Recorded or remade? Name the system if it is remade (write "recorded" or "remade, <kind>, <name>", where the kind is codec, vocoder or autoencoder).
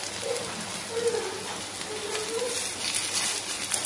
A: recorded